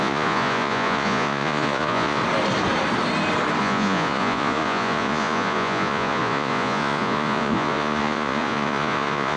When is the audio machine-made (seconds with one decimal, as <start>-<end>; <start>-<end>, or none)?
0.0-2.2; 3.6-9.4